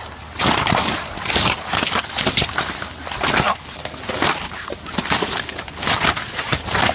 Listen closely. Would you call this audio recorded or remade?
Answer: recorded